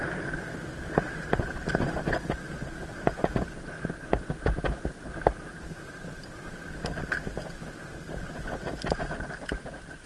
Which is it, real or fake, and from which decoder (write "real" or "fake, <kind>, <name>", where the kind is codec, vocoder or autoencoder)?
real